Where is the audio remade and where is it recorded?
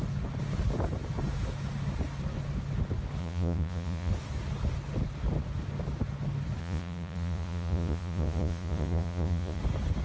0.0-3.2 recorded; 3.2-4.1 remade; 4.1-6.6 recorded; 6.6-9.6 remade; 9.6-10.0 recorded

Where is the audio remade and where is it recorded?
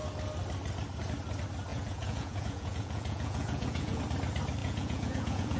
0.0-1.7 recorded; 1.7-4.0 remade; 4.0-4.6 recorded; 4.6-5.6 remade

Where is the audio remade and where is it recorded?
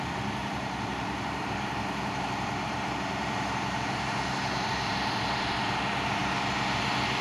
0.0-0.4 recorded; 0.4-4.7 remade; 4.7-7.2 recorded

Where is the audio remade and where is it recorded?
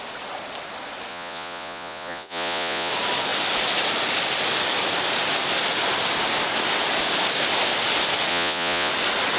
0.0-1.1 recorded; 1.1-2.9 remade; 2.9-8.3 recorded; 8.3-8.9 remade; 8.9-9.4 recorded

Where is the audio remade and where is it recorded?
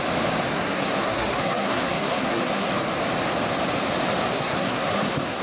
0.0-0.5 recorded; 0.5-2.7 remade; 2.7-4.3 recorded; 4.3-5.4 remade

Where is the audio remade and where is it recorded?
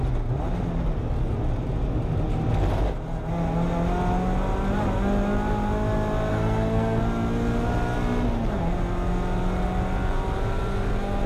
0.0-6.3 recorded; 6.3-7.0 remade; 7.0-11.3 recorded